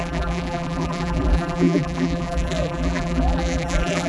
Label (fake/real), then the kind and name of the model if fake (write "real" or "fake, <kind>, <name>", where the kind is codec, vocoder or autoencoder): fake, vocoder, BigVGAN v2